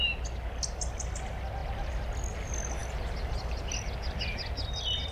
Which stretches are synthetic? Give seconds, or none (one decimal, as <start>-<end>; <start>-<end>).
none